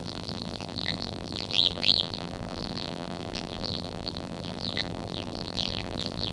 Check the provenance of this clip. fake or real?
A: fake